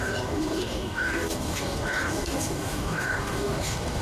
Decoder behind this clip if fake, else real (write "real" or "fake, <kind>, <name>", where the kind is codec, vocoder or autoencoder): fake, codec, DAC